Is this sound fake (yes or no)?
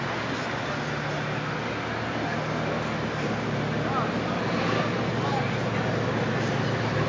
no